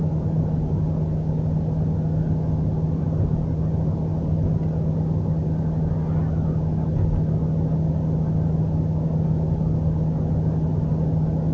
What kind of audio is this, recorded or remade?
recorded